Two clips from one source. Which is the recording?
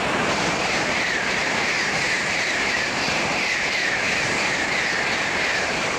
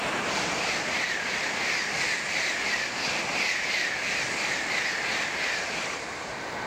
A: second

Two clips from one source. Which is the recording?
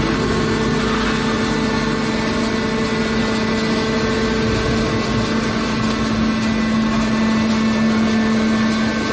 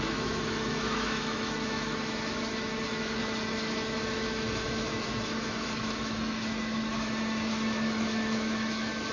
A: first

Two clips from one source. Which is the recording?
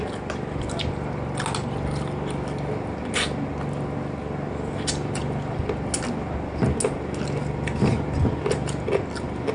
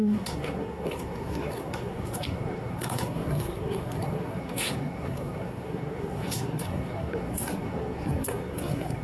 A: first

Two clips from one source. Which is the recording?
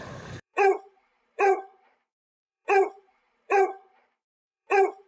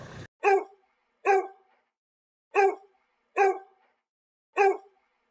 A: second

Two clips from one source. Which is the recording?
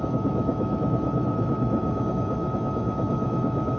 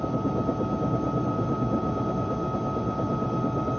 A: second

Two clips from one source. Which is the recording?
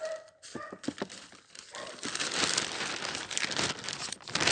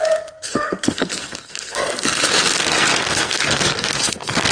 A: first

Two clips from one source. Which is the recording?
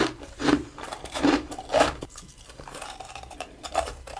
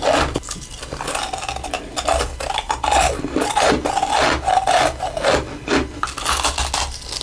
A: second